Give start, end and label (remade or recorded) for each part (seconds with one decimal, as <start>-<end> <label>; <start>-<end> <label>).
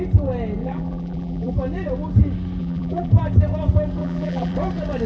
0.0-0.6 recorded; 0.6-1.5 remade; 1.5-2.6 recorded; 2.6-3.1 remade; 3.1-4.0 recorded; 4.0-4.5 remade; 4.5-5.1 recorded